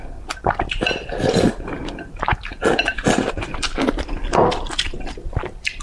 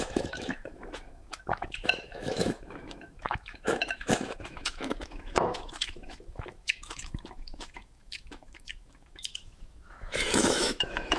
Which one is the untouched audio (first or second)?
first